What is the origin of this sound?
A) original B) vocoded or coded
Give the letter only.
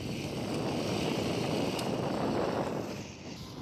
A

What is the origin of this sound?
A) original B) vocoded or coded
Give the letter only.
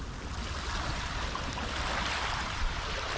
A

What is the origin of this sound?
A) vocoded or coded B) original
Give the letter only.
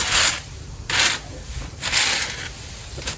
B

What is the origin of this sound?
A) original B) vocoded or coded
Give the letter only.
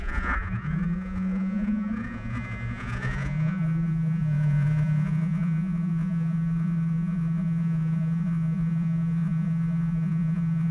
B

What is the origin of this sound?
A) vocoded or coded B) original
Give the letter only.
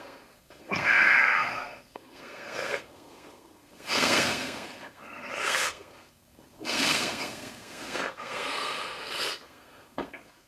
A